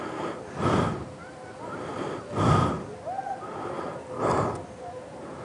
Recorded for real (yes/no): yes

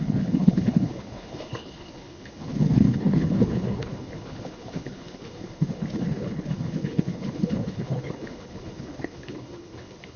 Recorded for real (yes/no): no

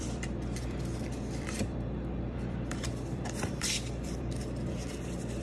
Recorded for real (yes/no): no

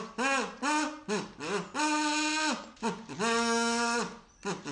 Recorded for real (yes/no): yes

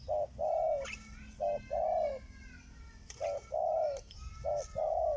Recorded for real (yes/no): yes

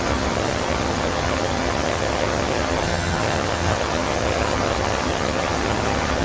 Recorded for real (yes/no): no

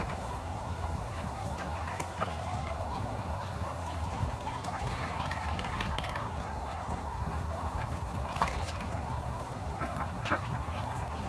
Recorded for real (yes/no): no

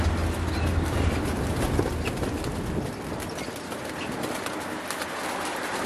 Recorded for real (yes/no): yes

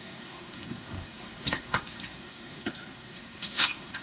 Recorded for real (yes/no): no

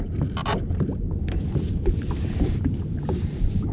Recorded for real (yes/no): yes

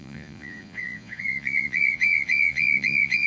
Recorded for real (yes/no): no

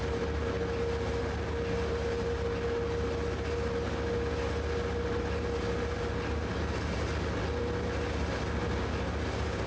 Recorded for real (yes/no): yes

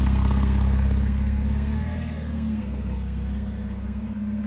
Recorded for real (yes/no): no